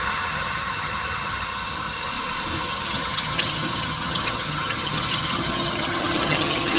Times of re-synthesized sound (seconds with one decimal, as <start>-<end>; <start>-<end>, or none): 0.0-2.1; 2.6-6.8